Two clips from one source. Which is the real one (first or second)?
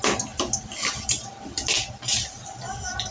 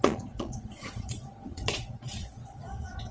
first